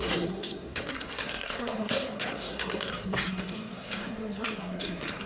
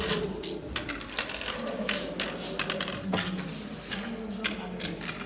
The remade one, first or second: first